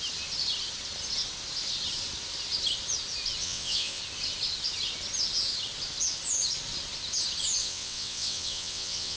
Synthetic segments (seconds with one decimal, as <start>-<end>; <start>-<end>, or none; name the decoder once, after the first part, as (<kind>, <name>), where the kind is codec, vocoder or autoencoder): 3.4-4.0 (vocoder, WaveNeXt); 7.6-9.2